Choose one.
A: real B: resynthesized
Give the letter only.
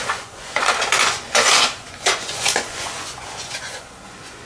B